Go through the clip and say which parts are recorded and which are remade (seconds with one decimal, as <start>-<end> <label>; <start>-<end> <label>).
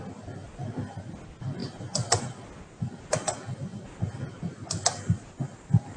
0.0-6.0 recorded